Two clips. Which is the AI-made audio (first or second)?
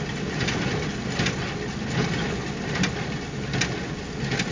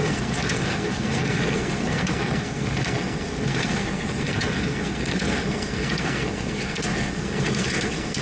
second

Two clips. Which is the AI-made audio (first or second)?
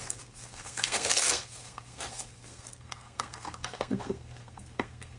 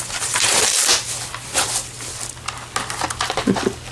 first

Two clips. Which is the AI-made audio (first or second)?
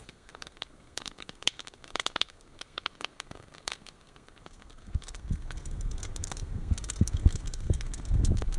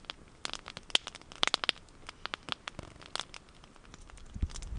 first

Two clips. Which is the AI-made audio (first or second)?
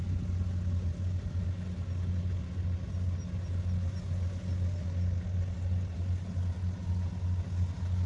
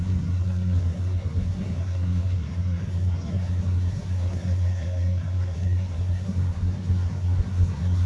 second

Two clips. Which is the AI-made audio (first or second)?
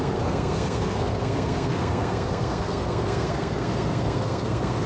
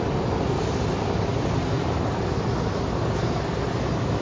first